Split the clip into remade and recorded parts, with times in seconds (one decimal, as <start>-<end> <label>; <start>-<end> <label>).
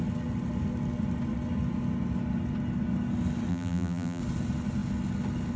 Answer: 0.0-3.5 recorded; 3.5-4.2 remade; 4.2-5.6 recorded